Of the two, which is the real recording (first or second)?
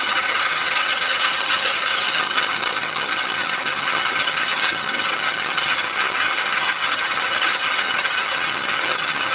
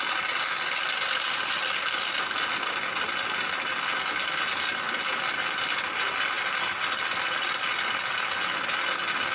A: second